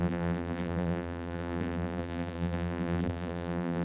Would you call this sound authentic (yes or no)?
no